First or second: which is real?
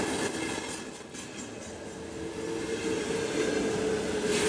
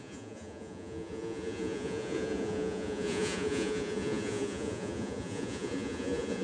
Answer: first